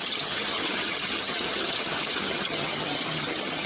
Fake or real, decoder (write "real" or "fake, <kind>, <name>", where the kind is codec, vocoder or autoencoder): fake, vocoder, HiFi-GAN